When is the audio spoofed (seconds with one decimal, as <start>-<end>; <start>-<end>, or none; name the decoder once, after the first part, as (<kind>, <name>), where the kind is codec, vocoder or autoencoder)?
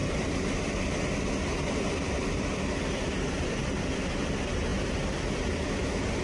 none